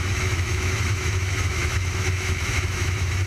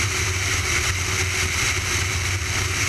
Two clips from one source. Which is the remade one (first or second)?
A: first